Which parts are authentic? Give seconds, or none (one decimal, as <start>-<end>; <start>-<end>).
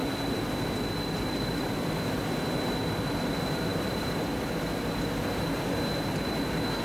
0.0-3.7; 4.9-6.8